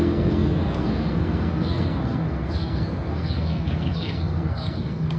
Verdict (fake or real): fake